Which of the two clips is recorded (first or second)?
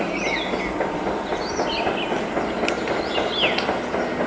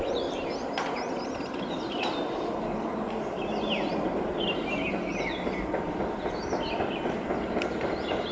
first